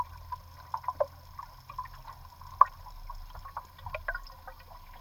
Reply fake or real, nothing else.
real